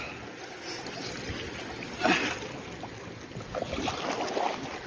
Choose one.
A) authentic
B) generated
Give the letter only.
A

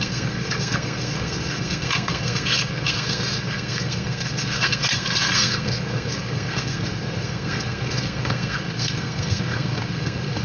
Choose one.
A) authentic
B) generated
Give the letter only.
B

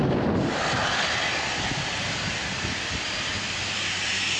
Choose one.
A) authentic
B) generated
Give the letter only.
A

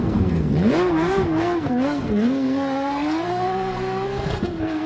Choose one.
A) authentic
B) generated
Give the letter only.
B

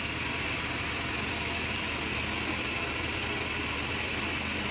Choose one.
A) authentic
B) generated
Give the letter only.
A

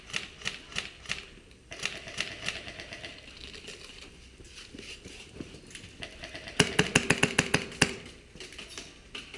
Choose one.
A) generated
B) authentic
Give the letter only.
B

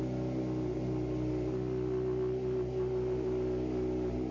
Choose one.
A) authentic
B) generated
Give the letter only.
A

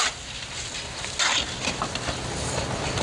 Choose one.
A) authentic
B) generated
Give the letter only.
A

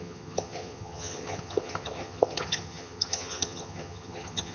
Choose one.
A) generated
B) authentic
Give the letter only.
A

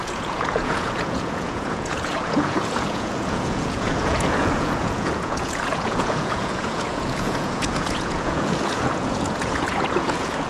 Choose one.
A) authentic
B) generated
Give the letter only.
B